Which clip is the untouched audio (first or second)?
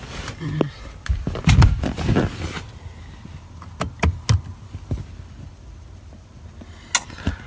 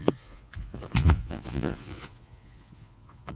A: first